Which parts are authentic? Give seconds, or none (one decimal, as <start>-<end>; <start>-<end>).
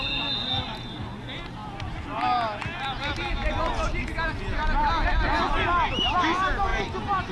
0.0-7.3